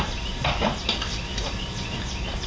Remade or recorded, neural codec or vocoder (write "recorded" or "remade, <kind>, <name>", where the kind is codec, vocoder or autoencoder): recorded